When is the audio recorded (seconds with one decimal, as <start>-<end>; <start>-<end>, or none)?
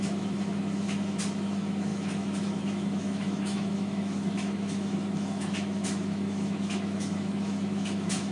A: none